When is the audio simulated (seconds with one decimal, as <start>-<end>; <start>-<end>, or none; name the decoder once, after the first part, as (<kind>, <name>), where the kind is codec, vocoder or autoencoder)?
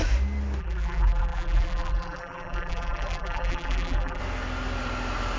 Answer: 0.6-4.2 (vocoder, BigVGAN v2)